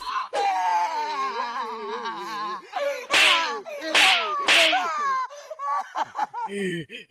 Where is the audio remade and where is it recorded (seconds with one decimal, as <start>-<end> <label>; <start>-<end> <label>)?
0.0-1.9 remade; 1.9-5.7 recorded; 5.7-7.1 remade